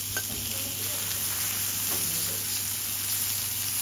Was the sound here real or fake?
real